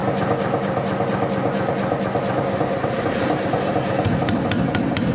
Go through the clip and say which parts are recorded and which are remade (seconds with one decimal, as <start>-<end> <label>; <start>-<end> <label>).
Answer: 0.0-2.8 recorded; 2.8-3.7 remade; 3.7-5.1 recorded